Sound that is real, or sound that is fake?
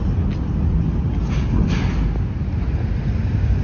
real